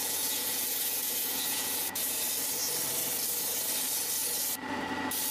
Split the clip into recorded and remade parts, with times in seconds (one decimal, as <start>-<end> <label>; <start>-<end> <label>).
0.0-2.2 remade; 2.2-5.3 recorded

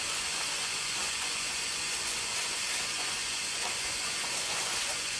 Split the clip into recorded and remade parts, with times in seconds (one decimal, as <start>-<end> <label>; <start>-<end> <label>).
0.0-5.2 remade

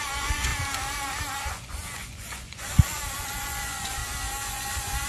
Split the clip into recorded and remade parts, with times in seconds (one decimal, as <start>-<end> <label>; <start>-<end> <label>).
0.0-0.5 remade; 0.5-1.4 recorded; 1.4-4.0 remade; 4.0-4.5 recorded; 4.5-5.1 remade